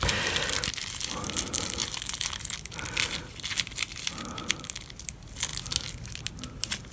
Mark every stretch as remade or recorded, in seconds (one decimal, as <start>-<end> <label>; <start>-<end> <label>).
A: 0.0-6.9 recorded